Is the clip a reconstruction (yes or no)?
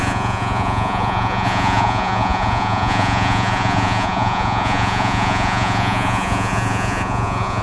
yes